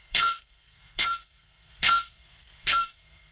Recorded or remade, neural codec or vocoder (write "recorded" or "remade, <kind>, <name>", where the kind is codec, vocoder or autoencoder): remade, codec, SNAC